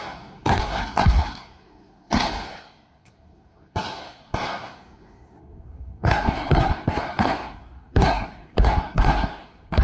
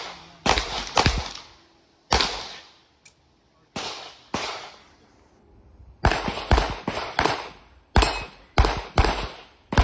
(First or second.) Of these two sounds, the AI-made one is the first